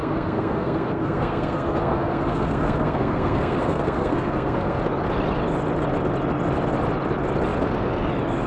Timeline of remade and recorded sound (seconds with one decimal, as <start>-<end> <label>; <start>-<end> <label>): 0.0-4.8 remade; 4.8-8.5 recorded